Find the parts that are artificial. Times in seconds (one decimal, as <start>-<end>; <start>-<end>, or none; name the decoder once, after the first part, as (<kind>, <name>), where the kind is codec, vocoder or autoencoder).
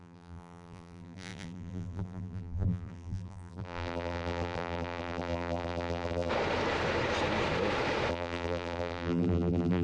0.0-6.3 (vocoder, BigVGAN v2); 8.1-9.8